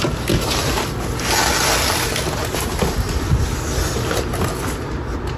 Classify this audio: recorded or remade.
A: recorded